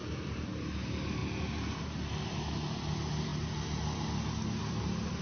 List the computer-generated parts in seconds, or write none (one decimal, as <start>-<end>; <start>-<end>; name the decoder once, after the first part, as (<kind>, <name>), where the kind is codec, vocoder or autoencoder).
none